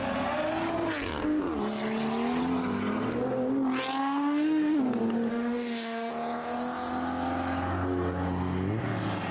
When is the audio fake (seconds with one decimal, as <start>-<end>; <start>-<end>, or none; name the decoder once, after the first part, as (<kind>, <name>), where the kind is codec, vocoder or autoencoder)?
4.0-4.8 (autoencoder, DAC-VAE); 5.3-6.1